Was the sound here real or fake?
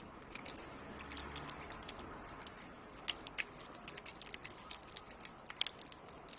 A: real